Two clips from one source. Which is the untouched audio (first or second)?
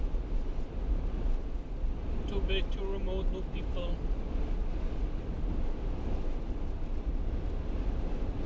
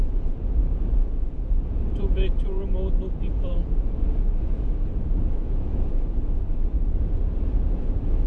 first